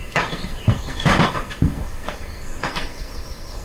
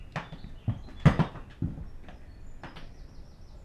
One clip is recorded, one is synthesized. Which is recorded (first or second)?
second